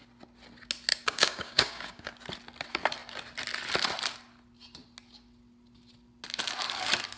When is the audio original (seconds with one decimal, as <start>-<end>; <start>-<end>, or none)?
0.0-0.9; 2.1-7.2